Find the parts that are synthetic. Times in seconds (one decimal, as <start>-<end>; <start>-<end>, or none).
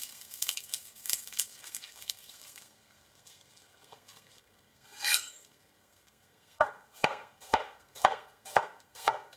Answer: 0.0-9.4